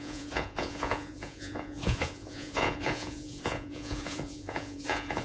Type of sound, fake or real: fake